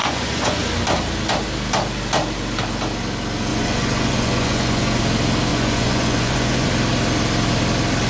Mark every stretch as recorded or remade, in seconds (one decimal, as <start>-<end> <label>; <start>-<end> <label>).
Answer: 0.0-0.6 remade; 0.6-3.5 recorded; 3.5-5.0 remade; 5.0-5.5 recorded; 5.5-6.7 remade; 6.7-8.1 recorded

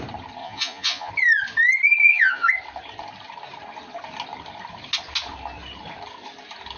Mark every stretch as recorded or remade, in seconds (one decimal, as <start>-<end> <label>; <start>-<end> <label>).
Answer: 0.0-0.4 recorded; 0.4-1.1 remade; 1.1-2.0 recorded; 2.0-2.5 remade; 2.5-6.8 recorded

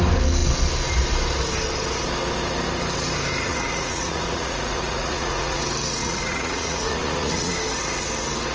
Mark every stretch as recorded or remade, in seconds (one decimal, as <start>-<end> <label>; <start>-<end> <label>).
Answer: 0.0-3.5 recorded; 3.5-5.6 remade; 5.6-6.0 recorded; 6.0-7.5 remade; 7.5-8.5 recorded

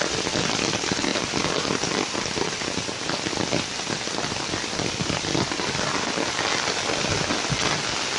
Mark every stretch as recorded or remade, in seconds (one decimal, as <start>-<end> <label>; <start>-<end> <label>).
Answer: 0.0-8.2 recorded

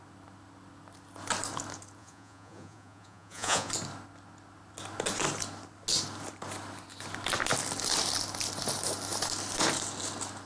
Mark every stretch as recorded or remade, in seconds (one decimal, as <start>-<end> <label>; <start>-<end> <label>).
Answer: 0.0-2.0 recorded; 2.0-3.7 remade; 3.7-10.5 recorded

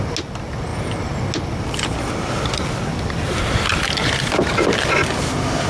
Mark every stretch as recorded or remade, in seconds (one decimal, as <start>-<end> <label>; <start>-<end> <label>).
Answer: 0.0-5.7 recorded

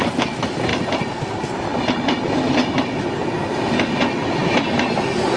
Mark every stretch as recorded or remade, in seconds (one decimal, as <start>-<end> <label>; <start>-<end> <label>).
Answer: 0.0-5.4 recorded